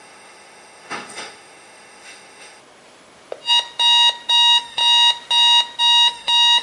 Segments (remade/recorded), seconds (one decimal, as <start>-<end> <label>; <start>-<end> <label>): 0.0-2.6 remade; 2.6-4.3 recorded; 4.3-4.8 remade; 4.8-5.8 recorded; 5.8-6.6 remade